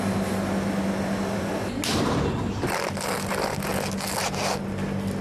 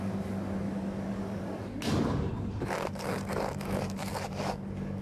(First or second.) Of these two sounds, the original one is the first